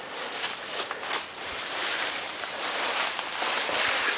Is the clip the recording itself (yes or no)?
yes